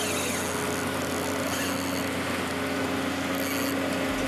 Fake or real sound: real